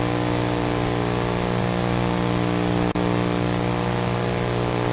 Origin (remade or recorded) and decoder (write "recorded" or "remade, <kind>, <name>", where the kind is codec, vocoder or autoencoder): recorded